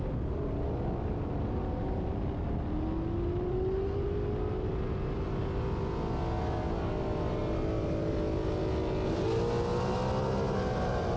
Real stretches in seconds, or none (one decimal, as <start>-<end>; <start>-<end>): 0.0-11.2

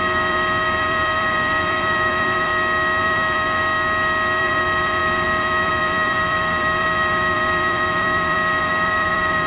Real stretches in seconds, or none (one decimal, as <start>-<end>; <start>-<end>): 2.5-3.0; 3.7-4.4

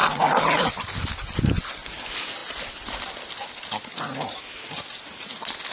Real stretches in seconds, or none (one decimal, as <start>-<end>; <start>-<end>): 0.0-5.7

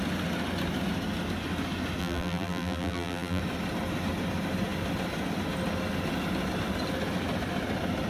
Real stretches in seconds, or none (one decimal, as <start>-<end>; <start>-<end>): 0.0-2.0; 3.4-8.1

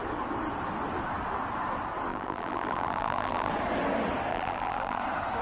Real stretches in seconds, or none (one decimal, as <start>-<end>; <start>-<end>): 0.0-2.1; 3.5-4.3; 5.0-5.4

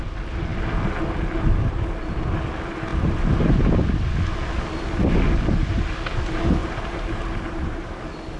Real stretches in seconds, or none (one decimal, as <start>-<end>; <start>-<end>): 0.0-6.6; 8.0-8.4

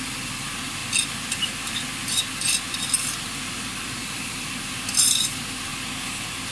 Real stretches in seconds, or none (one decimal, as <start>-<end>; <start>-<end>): 5.7-6.5